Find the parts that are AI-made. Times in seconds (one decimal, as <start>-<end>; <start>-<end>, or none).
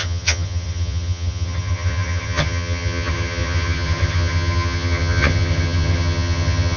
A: 0.0-6.8